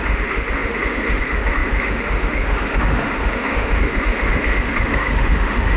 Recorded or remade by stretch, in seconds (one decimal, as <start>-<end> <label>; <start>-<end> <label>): 0.0-5.8 remade